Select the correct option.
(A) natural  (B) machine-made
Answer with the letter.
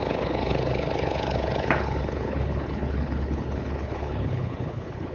B